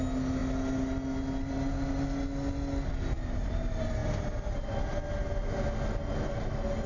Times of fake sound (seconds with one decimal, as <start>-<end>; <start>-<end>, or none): none